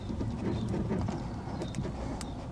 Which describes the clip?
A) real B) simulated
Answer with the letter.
A